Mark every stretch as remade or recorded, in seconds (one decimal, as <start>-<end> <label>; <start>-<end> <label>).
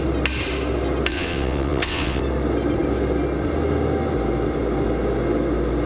0.0-1.1 recorded; 1.1-2.2 remade; 2.2-5.9 recorded